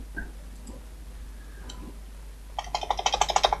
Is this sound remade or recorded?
recorded